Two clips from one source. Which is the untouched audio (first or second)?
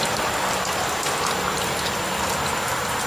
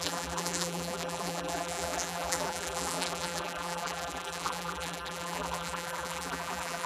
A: first